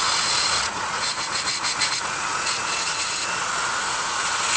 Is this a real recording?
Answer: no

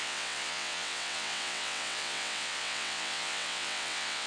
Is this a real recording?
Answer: no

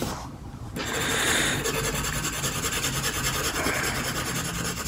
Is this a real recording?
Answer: yes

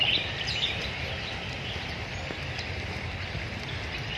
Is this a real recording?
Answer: yes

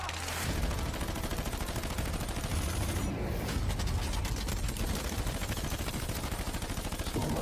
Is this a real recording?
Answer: yes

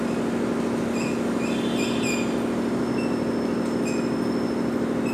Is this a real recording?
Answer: yes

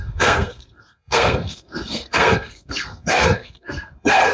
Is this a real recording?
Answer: no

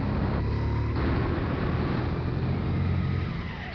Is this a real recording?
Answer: yes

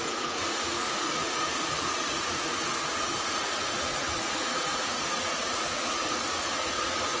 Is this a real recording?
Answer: no